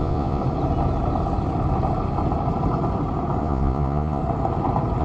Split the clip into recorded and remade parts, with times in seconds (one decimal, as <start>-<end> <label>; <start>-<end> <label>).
0.0-0.4 remade; 0.4-3.4 recorded; 3.4-4.2 remade; 4.2-5.0 recorded

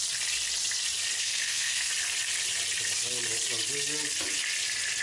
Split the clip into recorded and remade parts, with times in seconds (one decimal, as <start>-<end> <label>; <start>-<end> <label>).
0.0-1.2 recorded; 1.2-1.9 remade; 1.9-5.0 recorded

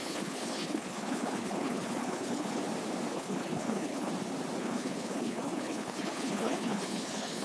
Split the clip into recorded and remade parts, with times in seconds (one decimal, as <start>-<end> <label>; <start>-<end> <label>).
0.0-2.6 remade; 2.6-3.1 recorded; 3.1-4.1 remade; 4.1-4.6 recorded; 4.6-7.4 remade

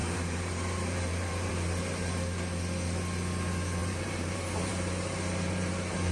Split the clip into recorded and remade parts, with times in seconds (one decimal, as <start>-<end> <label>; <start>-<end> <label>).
0.0-1.5 remade; 1.5-3.8 recorded; 3.8-6.1 remade

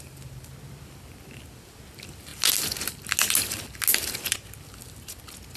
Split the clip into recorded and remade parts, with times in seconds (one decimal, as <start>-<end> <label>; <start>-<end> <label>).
0.0-5.6 recorded

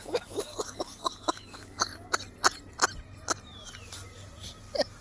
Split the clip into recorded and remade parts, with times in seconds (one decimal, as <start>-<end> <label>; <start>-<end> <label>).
0.0-1.9 remade; 1.9-5.0 recorded

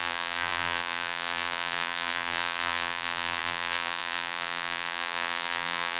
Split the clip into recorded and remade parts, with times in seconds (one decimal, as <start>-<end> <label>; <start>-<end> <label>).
0.0-6.0 remade

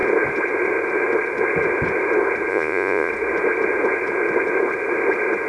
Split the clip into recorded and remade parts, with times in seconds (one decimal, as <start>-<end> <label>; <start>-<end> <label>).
0.0-2.5 recorded; 2.5-3.1 remade; 3.1-5.5 recorded